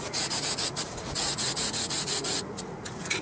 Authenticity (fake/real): fake